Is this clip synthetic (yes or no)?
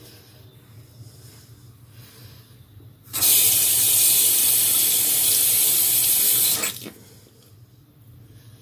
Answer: no